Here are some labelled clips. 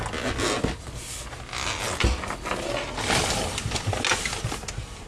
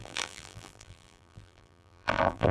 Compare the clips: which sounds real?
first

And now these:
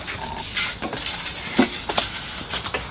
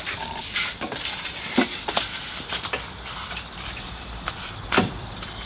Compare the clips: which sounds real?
first